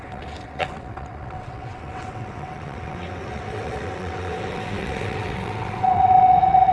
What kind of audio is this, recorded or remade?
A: remade